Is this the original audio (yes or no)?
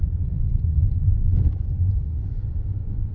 no